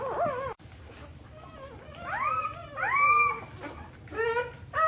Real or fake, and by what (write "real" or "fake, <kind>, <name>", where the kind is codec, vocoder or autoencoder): real